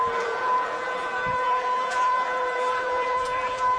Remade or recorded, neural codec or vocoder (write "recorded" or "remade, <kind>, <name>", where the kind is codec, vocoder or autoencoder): remade, vocoder, BigVGAN v2